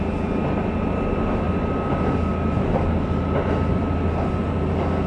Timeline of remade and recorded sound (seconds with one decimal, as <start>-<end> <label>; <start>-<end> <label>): 0.0-2.3 recorded; 2.3-3.2 remade; 3.2-5.1 recorded